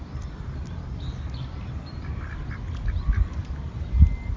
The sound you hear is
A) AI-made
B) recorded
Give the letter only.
B